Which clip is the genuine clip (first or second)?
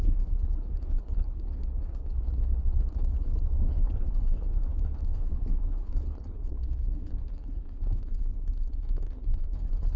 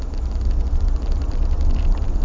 second